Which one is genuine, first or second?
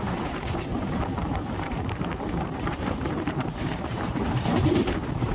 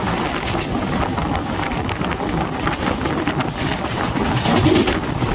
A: second